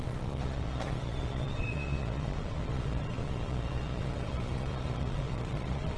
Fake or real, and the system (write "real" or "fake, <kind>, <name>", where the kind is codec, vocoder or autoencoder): fake, vocoder, Vocos